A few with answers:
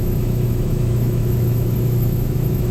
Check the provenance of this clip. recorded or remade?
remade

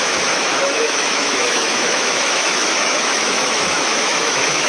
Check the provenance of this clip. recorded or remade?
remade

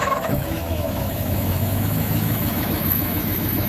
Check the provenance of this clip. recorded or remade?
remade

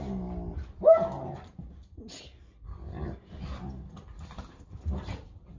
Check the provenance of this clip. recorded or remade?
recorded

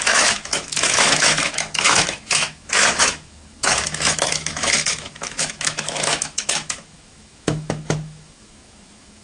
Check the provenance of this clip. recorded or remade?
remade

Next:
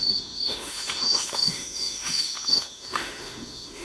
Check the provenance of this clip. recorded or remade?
remade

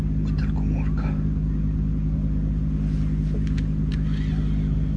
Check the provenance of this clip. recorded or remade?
recorded